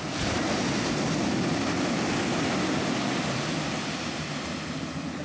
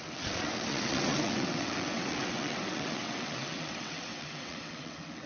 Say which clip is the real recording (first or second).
first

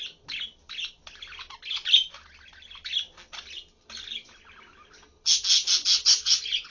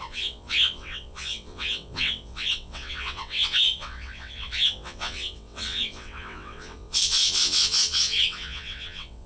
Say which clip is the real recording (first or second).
first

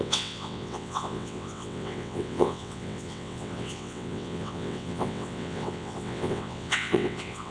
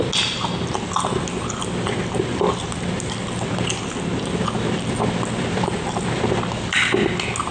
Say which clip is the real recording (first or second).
second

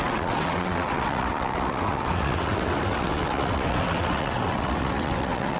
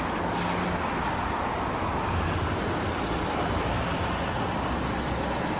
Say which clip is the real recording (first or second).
second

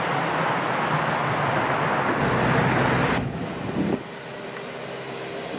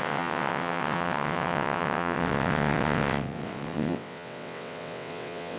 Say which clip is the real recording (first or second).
first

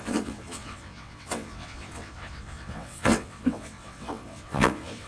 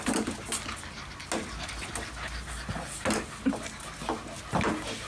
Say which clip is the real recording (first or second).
second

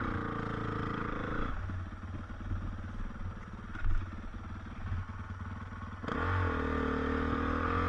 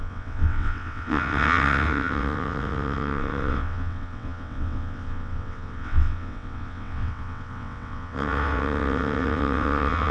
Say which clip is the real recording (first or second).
first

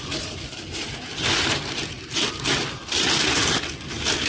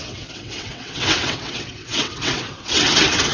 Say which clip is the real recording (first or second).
first